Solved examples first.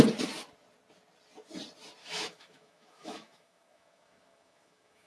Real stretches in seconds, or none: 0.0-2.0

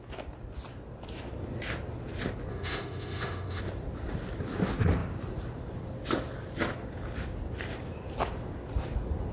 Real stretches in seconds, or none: 0.0-2.5; 3.6-9.3

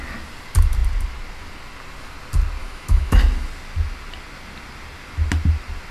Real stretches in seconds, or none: 0.0-2.6; 3.2-5.9

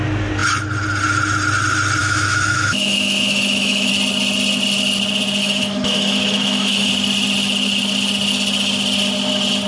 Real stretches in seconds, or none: 0.0-2.0; 3.9-5.4; 6.9-9.7